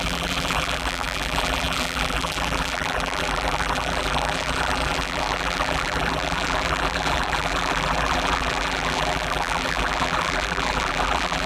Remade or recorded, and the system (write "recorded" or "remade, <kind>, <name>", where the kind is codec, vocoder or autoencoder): remade, vocoder, BigVGAN v2